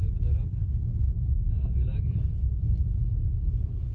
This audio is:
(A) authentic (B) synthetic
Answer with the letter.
A